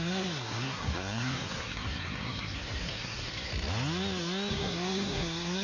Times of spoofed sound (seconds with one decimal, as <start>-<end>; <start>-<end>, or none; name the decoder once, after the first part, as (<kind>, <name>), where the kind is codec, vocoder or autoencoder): 0.0-3.5 (codec, SNAC); 4.5-5.6